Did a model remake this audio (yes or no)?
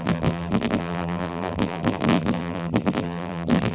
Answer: yes